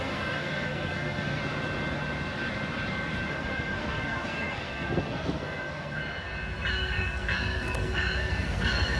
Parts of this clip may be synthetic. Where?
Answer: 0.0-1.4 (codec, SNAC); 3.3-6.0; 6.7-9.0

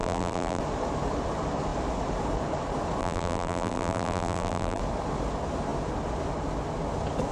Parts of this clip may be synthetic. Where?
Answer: 0.0-0.6 (vocoder, BigVGAN v2); 3.0-4.8